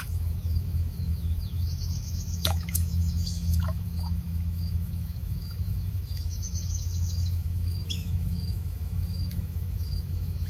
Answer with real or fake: fake